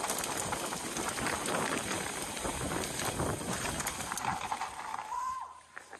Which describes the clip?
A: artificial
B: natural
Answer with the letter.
B